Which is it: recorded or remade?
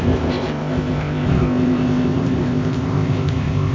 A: remade